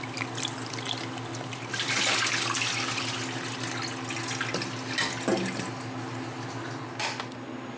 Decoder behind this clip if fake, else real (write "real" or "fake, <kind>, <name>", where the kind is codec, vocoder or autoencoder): real